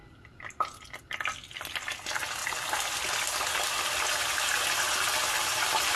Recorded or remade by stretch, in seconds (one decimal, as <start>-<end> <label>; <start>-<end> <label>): 0.0-6.0 recorded